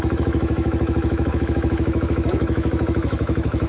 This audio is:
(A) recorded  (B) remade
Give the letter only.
B